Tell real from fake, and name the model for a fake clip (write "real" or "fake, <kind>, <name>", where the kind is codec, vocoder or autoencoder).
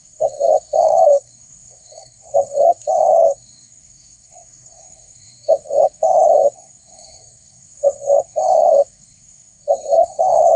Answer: fake, codec, SNAC